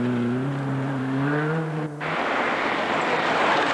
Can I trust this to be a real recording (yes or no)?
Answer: yes